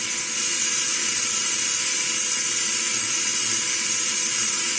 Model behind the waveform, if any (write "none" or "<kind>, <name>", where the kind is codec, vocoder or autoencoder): vocoder, Vocos